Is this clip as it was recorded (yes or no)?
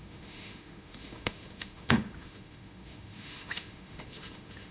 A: no